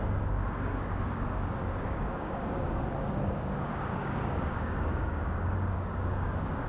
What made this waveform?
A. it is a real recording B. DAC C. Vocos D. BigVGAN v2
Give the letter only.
B